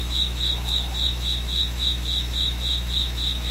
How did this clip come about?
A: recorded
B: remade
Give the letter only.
B